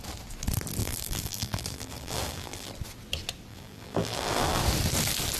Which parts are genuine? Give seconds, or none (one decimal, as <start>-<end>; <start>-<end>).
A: 0.0-0.8; 2.7-3.5; 4.6-5.4